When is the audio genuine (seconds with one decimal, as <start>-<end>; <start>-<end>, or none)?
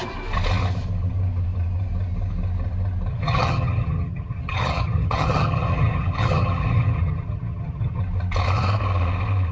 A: 0.0-3.1; 8.0-9.5